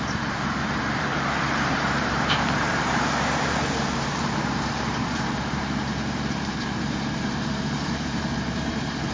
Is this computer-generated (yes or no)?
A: yes